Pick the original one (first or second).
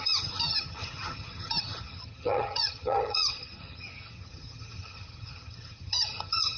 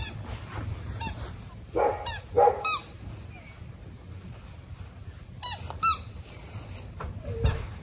second